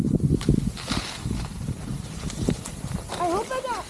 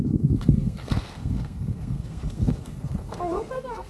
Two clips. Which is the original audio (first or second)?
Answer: first